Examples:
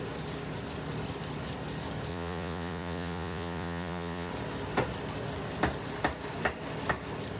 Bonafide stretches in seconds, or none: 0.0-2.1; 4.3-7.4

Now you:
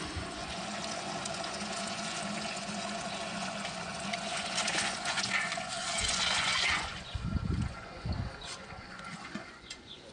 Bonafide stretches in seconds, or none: none

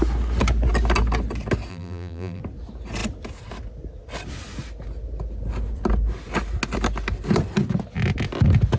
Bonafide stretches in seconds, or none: 0.0-1.7; 2.4-8.8

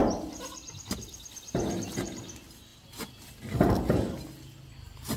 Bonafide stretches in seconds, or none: 0.0-5.2

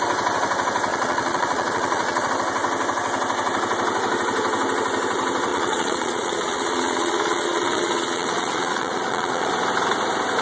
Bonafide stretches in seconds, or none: 0.0-0.9; 2.3-5.5; 9.5-10.4

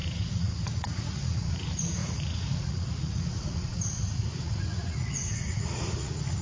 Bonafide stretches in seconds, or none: none

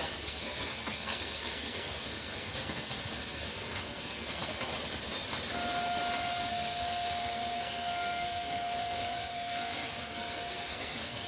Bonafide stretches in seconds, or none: 4.7-6.5